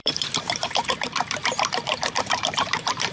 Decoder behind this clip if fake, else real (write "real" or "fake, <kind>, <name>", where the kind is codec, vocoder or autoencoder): fake, vocoder, BigVGAN v2